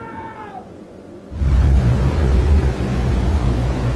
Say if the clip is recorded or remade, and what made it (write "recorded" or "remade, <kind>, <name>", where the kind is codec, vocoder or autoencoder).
remade, vocoder, Vocos